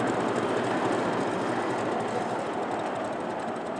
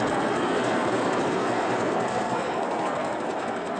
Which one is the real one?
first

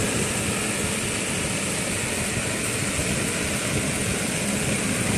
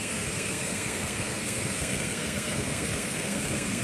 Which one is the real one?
first